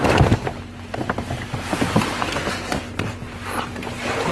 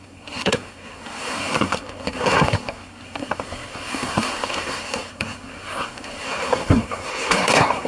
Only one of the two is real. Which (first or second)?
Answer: first